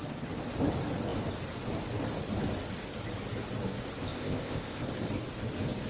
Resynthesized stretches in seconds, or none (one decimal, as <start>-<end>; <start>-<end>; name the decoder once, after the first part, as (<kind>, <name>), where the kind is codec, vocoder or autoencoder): 4.0-4.8 (codec, ZipCodec)